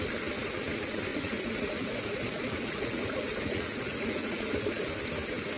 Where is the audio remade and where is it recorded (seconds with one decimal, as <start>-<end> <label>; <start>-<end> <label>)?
0.0-1.1 recorded; 1.1-4.5 remade; 4.5-5.6 recorded